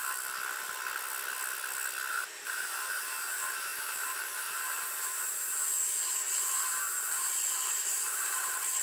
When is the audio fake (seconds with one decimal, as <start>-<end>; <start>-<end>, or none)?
2.1-8.8